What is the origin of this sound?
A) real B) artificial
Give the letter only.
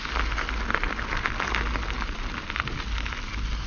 A